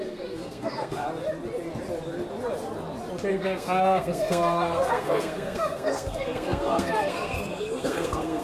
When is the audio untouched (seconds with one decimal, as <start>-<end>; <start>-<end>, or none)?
1.0-3.3